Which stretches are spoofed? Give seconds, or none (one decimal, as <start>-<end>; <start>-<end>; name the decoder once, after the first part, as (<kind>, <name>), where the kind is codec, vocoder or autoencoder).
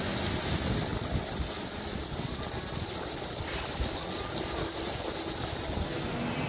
none